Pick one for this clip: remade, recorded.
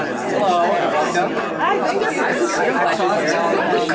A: recorded